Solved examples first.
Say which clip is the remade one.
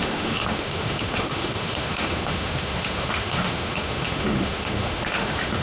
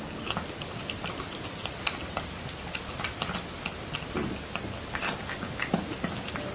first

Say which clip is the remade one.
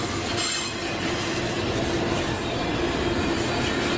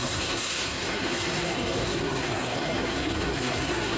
second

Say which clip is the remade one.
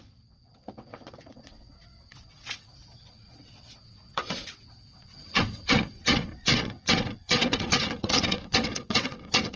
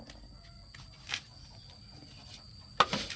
first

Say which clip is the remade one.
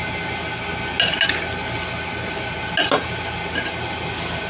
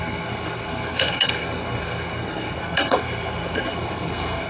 second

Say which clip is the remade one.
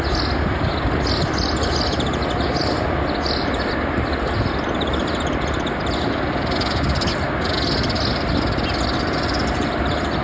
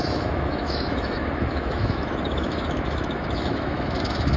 second